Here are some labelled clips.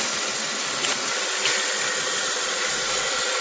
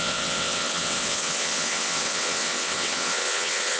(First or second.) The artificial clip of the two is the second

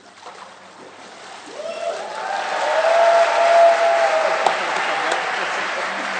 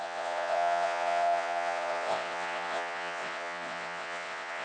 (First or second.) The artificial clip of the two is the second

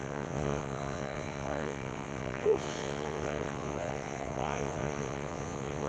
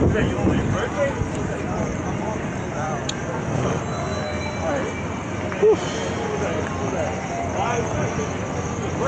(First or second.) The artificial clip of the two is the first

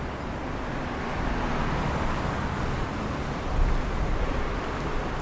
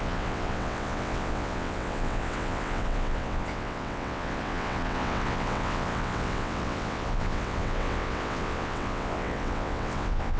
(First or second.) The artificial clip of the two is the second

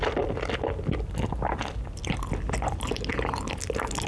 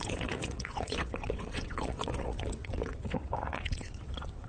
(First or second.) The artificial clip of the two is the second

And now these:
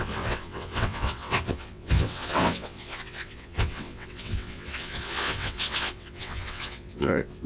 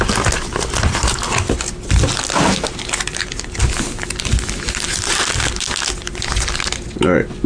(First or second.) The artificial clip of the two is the first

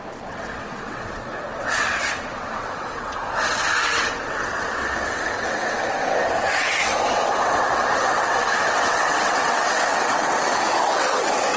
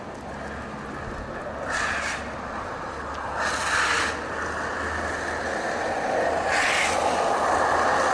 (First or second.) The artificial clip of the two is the first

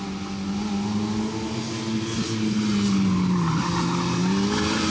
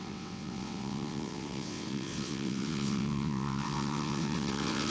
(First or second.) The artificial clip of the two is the second